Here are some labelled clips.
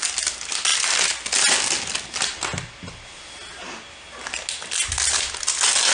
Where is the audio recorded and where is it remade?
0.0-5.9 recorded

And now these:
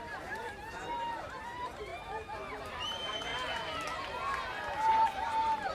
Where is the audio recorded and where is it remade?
0.0-1.9 remade; 1.9-2.7 recorded; 2.7-3.3 remade; 3.3-4.9 recorded; 4.9-5.7 remade

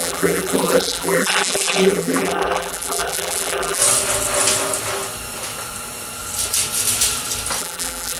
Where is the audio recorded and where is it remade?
0.0-3.8 remade; 3.8-7.6 recorded; 7.6-8.2 remade

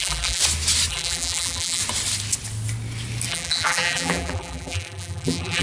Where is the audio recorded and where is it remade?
0.0-0.4 remade; 0.4-0.9 recorded; 0.9-1.8 remade; 1.8-3.3 recorded; 3.3-5.6 remade

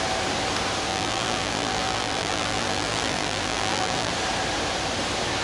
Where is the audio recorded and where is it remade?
0.0-0.9 recorded; 0.9-4.1 remade; 4.1-5.4 recorded

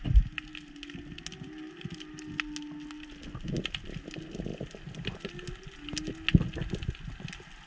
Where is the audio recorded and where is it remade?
0.0-7.7 recorded

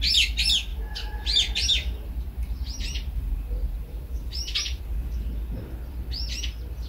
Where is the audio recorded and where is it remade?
0.0-0.7 recorded; 0.7-4.8 remade; 4.8-6.9 recorded

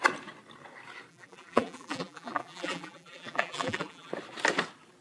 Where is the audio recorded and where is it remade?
0.0-1.1 recorded; 1.1-4.1 remade; 4.1-5.0 recorded